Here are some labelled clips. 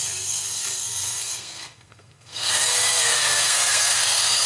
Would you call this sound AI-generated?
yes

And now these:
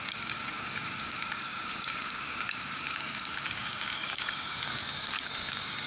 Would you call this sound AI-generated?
yes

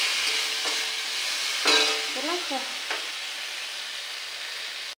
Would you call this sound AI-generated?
no